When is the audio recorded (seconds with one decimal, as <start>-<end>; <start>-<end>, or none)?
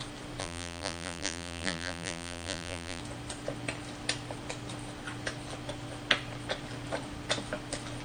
0.0-0.4; 3.0-8.0